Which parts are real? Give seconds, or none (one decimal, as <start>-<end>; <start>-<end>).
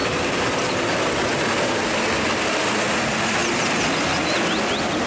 2.5-5.1